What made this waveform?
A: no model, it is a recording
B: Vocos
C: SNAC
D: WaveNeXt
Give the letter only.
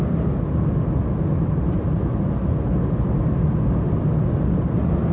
A